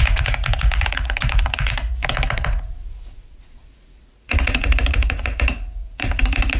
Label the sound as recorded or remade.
remade